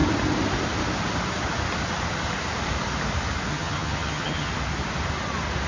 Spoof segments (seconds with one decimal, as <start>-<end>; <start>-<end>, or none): 3.5-4.5

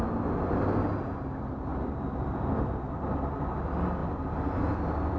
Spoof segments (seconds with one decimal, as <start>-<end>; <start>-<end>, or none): 1.7-3.2

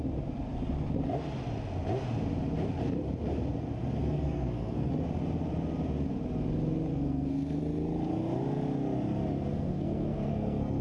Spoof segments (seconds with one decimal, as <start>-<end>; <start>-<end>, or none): 4.0-4.9; 6.9-7.6; 9.5-10.8

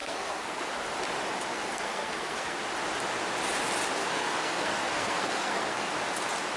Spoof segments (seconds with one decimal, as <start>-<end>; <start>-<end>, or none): 0.0-0.7; 1.5-2.6; 4.0-5.9